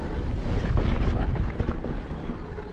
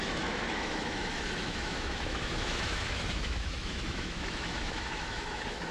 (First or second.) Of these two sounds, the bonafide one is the first